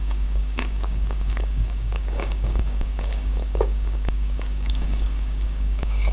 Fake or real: fake